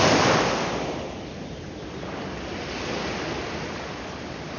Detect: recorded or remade recorded